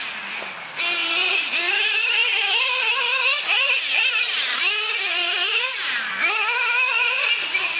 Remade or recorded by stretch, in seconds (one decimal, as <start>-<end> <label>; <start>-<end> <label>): 0.0-1.0 recorded; 1.0-4.5 remade; 4.5-5.1 recorded; 5.1-6.1 remade; 6.1-7.8 recorded